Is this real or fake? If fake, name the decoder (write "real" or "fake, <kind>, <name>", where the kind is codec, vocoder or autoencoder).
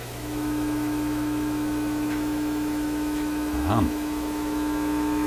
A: fake, autoencoder, DAC-VAE